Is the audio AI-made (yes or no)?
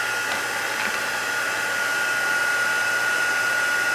no